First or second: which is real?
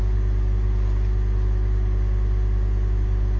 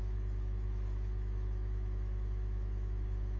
first